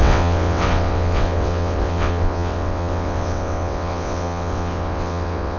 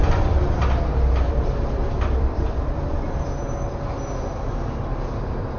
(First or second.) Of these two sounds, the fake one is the first